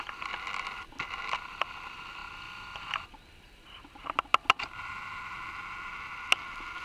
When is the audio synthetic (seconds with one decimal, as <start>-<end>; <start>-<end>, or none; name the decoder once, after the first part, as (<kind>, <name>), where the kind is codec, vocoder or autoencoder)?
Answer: none